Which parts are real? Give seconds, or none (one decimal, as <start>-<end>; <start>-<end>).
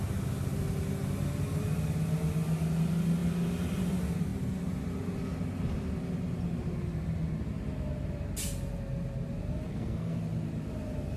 0.0-9.7; 10.2-11.2